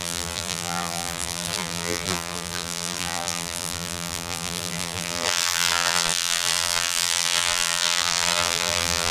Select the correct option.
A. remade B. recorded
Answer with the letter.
A